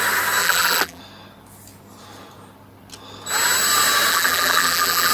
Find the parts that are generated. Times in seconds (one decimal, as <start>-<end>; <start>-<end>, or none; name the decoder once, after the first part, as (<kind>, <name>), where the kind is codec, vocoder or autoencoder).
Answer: 0.4-1.0 (vocoder, BigVGAN v2); 4.1-5.1